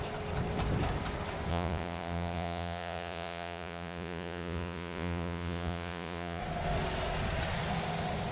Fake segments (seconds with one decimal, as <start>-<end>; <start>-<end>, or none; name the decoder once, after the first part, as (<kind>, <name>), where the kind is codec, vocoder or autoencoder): 1.5-6.4 (vocoder, Vocos)